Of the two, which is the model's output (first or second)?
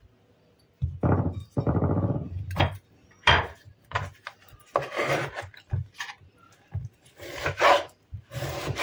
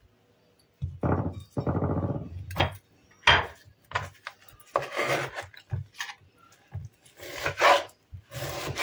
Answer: first